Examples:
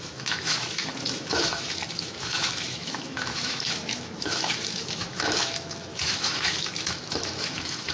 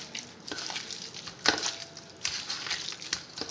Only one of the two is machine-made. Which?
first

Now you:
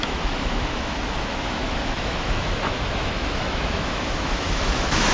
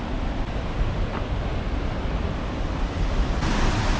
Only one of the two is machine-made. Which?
first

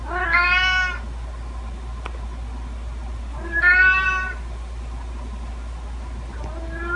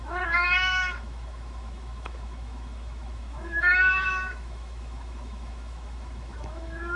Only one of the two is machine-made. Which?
second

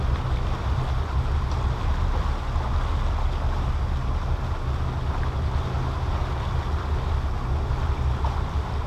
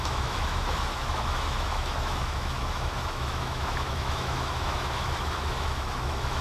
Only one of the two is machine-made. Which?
second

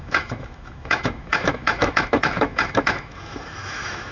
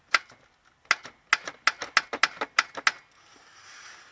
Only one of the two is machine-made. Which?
first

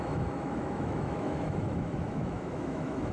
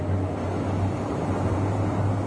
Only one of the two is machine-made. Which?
first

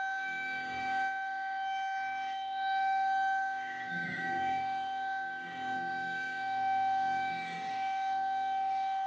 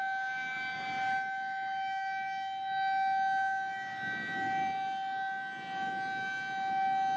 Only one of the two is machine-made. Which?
first